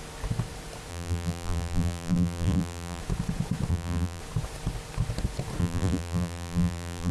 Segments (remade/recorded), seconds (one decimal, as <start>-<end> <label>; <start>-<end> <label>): 0.0-0.9 recorded; 0.9-3.0 remade; 3.0-3.7 recorded; 3.7-4.2 remade; 4.2-5.6 recorded; 5.6-7.1 remade